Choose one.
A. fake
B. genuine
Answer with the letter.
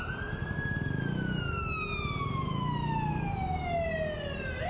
B